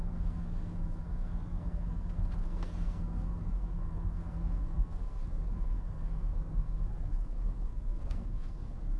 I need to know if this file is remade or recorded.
remade